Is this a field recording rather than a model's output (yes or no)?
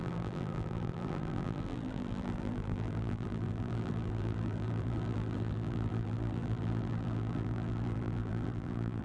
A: no